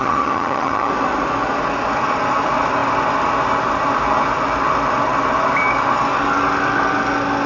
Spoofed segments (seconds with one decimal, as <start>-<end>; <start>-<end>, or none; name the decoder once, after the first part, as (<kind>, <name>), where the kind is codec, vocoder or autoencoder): 0.0-0.9 (vocoder, HiFi-GAN)